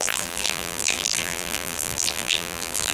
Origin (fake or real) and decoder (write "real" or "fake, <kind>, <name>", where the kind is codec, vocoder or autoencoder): fake, vocoder, BigVGAN v2